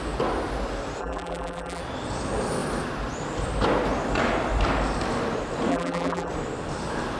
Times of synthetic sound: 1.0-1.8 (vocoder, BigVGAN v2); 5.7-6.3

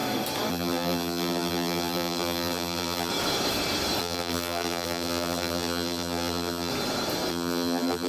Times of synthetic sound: 0.5-3.1 (vocoder, BigVGAN v2); 4.0-6.7; 7.3-8.1

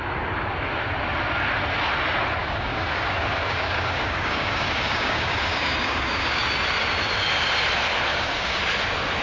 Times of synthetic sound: 2.4-6.4 (codec, DAC); 8.1-8.6

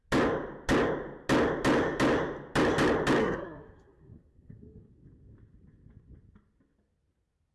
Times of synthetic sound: 3.2-4.9 (codec, SNAC)

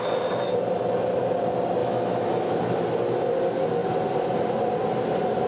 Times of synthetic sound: 1.8-2.5 (autoencoder, DAC-VAE)